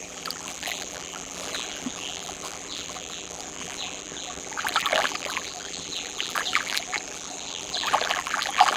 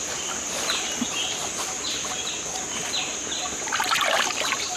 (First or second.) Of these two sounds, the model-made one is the first